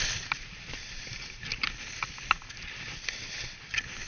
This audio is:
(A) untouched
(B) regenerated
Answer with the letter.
A